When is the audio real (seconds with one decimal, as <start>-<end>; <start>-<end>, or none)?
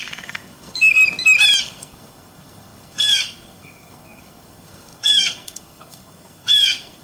1.0-1.6